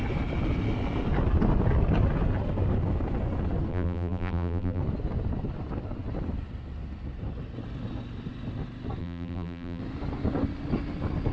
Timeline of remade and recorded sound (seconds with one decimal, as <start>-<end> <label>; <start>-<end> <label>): 0.0-3.7 recorded; 3.7-4.8 remade; 4.8-9.0 recorded; 9.0-9.8 remade; 9.8-11.3 recorded

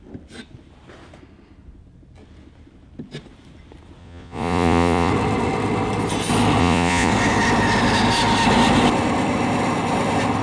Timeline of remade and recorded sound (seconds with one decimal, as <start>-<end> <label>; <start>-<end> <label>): 0.0-4.0 recorded; 4.0-5.1 remade; 5.1-6.6 recorded; 6.6-7.1 remade; 7.1-10.4 recorded

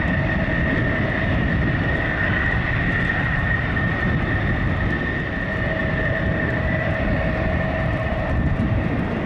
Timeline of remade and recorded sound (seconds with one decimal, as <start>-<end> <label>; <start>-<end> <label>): 0.0-5.8 recorded; 5.8-8.9 remade; 8.9-9.3 recorded

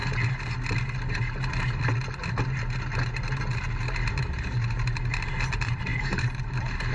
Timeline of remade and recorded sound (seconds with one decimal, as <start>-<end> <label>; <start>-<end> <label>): 0.0-4.1 recorded; 4.1-6.9 remade